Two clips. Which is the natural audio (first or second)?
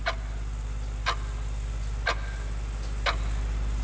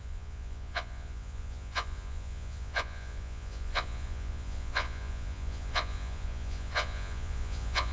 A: first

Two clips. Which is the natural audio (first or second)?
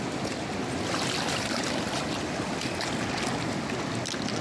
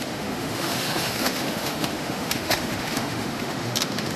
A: first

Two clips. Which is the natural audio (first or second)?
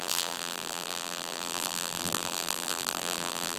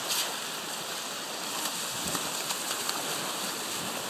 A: second